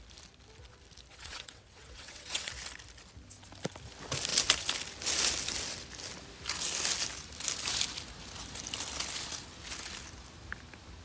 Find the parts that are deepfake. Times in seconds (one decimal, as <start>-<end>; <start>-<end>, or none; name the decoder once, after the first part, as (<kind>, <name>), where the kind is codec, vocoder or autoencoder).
1.1-2.5 (vocoder, WaveNeXt)